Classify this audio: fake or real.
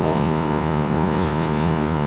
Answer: fake